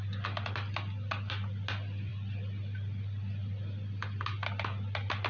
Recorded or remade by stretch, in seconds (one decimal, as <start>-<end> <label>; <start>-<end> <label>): 0.0-5.3 recorded